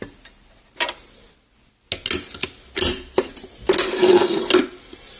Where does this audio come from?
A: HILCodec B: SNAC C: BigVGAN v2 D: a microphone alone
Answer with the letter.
D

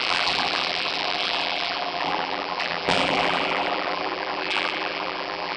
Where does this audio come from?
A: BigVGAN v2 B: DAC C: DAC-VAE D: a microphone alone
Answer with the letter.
A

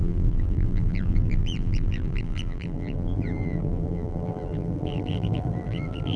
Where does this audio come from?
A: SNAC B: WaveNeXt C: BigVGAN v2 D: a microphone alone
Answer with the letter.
C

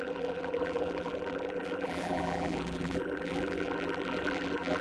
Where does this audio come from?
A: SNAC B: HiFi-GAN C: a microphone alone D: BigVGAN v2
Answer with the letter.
D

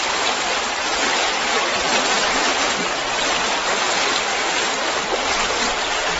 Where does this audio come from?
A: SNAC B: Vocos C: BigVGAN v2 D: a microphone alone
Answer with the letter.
D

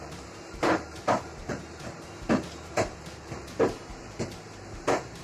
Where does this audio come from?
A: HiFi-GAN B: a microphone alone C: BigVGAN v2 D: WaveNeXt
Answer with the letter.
C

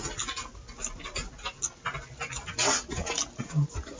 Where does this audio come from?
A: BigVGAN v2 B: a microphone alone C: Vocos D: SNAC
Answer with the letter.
B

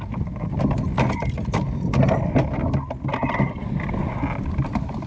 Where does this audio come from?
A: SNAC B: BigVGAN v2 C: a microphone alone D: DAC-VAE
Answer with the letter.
C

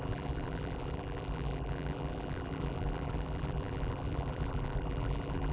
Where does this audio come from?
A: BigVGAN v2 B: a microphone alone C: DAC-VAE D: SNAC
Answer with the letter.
A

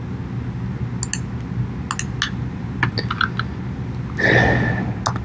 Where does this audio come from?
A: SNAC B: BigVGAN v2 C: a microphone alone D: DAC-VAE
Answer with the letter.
C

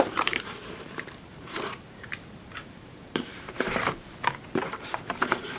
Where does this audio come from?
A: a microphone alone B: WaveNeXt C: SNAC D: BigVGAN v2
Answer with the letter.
D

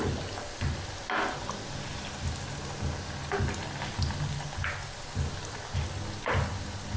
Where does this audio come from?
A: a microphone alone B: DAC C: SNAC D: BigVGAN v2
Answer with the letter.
A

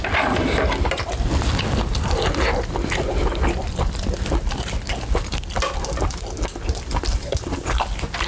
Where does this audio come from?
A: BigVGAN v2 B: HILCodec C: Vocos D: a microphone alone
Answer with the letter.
D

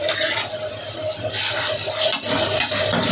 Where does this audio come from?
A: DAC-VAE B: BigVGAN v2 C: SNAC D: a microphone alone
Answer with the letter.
B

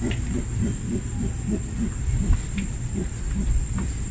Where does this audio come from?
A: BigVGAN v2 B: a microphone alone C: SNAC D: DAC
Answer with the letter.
A